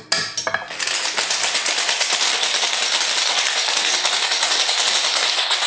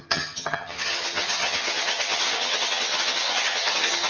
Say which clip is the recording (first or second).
first